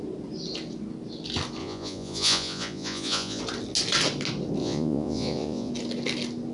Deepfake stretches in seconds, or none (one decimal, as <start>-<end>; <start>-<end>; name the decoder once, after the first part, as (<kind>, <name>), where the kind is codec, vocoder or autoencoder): 1.6-3.4 (vocoder, Vocos); 4.6-5.7